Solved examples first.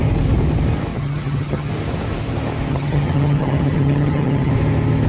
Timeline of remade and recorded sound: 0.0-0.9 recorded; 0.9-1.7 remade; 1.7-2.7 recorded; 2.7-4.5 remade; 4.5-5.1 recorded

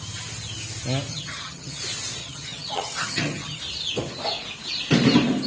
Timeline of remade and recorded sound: 0.0-1.1 recorded; 1.1-1.8 remade; 1.8-2.2 recorded; 2.2-3.6 remade; 3.6-5.5 recorded